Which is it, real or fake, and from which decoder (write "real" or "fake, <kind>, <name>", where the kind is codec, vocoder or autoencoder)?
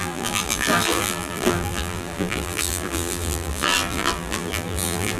fake, vocoder, BigVGAN v2